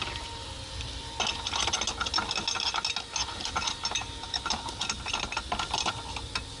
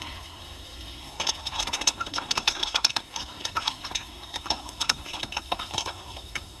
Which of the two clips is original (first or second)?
first